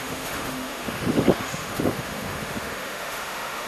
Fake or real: fake